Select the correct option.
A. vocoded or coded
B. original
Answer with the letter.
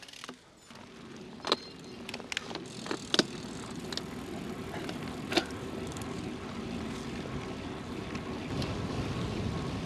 B